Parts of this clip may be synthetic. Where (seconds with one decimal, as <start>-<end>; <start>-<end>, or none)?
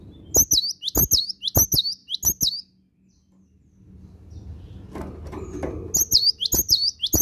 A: none